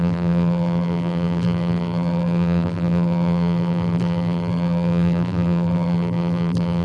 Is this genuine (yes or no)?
no